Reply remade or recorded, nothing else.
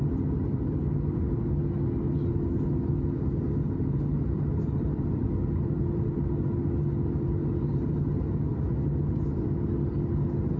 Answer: recorded